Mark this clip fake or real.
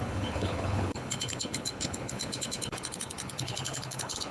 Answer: fake